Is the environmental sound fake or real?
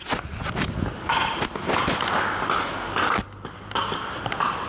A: real